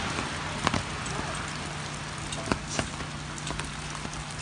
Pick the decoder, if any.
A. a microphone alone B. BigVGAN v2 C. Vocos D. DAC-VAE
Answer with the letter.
A